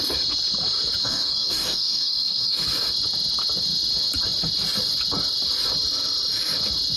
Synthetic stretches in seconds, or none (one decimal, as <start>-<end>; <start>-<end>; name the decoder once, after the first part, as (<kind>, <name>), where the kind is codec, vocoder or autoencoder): 1.0-2.6 (codec, DAC)